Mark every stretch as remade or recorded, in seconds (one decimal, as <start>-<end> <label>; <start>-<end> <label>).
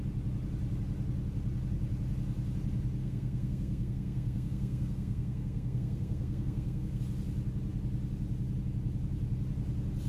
0.0-3.0 recorded; 3.0-7.0 remade; 7.0-10.1 recorded